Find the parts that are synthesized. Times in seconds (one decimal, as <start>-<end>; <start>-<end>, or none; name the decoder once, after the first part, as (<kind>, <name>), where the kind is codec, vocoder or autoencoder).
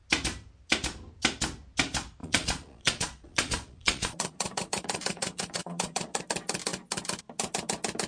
2.2-6.2 (vocoder, Vocos)